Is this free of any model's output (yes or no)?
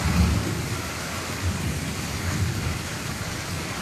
no